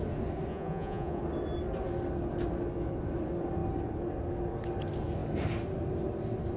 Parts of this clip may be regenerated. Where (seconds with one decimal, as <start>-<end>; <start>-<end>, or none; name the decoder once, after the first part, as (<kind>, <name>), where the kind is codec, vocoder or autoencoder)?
0.5-1.2 (vocoder, Vocos)

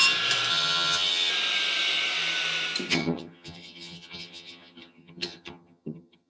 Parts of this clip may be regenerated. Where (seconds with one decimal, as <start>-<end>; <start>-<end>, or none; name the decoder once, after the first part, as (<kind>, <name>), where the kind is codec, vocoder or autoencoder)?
0.5-1.3 (vocoder, HiFi-GAN); 2.9-6.3

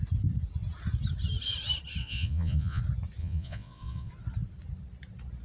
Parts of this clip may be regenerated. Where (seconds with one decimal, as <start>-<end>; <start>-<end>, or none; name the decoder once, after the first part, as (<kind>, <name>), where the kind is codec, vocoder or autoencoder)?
2.0-2.8 (vocoder, Vocos); 3.2-4.1

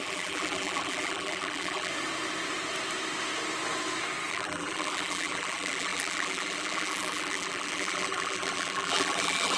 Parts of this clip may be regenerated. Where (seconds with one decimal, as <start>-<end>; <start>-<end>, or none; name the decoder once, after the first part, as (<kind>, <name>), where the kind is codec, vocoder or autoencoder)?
0.0-1.9 (vocoder, BigVGAN v2); 4.3-9.6